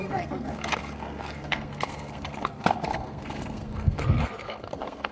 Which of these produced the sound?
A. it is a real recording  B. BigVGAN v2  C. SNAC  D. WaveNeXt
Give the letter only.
C